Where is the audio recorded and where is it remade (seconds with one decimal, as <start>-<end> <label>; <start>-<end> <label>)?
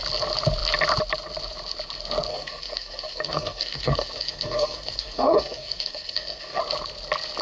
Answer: 0.0-2.3 recorded; 2.3-6.6 remade; 6.6-7.4 recorded